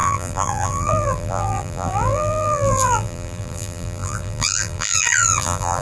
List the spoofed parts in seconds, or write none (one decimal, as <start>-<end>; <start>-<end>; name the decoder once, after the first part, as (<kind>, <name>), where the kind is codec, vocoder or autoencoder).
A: 0.0-5.8 (vocoder, BigVGAN v2)